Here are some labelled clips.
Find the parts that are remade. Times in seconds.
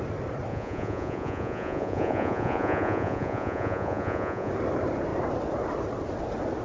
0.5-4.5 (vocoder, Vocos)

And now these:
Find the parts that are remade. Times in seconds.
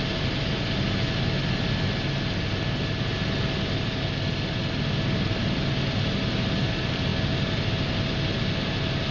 none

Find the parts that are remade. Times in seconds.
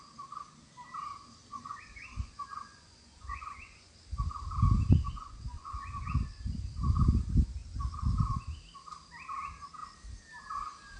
1.5-3.9 (vocoder, Vocos); 4.9-6.1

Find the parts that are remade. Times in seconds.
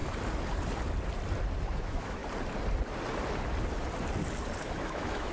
1.6-2.2 (autoencoder, DAC-VAE); 4.6-5.3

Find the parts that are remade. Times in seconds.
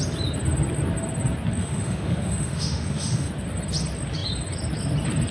1.6-3.3 (autoencoder, DAC-VAE)